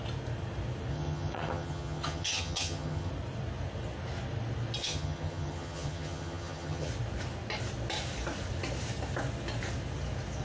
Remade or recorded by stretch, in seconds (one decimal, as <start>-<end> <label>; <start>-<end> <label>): 0.0-0.9 recorded; 0.9-3.1 remade; 3.1-4.8 recorded; 4.8-6.9 remade; 6.9-10.4 recorded